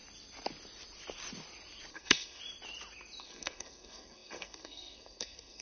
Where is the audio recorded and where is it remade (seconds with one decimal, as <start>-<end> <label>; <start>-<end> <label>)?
0.0-1.9 recorded; 1.9-2.4 remade; 2.4-3.2 recorded; 3.2-5.6 remade